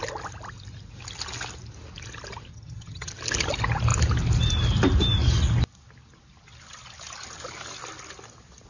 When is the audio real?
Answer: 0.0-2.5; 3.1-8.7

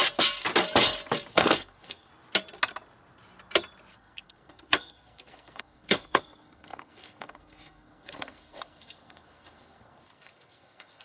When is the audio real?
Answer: 0.0-1.3; 2.1-3.9

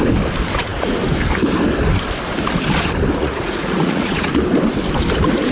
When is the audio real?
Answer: 0.0-3.2; 4.3-5.5

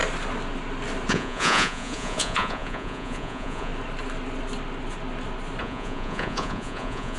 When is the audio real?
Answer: 0.0-1.1; 3.7-5.6

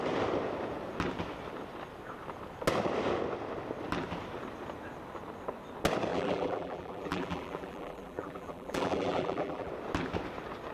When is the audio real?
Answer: 0.0-6.1; 9.7-10.7